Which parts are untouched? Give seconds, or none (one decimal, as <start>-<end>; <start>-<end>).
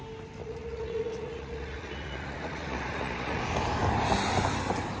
0.0-0.4; 3.4-5.0